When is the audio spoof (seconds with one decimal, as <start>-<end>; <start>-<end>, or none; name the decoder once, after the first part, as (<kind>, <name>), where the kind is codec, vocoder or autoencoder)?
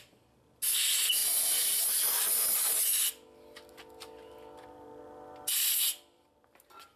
none